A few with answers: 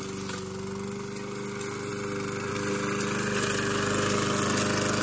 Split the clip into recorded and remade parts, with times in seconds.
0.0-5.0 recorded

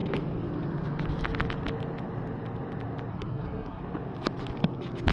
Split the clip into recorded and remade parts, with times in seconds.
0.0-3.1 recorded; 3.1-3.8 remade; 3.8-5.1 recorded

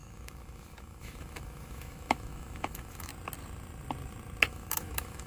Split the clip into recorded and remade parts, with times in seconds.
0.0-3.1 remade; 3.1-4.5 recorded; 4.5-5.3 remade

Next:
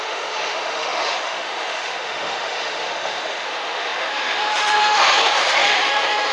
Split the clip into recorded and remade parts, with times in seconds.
0.0-6.3 remade

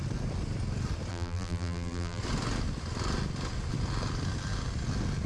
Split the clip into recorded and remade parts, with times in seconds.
0.0-1.1 recorded; 1.1-2.2 remade; 2.2-5.3 recorded

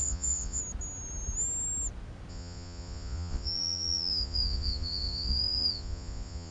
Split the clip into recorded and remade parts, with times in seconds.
0.0-0.6 remade; 0.6-2.3 recorded; 2.3-6.5 remade

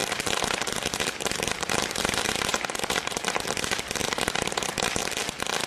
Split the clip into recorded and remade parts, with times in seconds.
0.0-3.4 remade; 3.4-4.0 recorded; 4.0-5.0 remade; 5.0-5.7 recorded

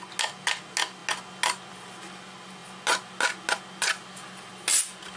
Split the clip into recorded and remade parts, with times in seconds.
0.0-5.2 recorded